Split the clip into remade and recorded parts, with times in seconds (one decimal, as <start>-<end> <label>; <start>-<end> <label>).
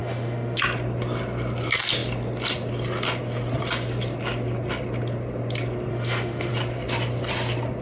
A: 0.0-0.6 remade; 0.6-5.9 recorded; 5.9-6.5 remade; 6.5-7.8 recorded